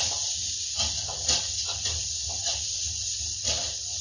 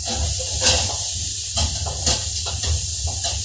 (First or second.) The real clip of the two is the second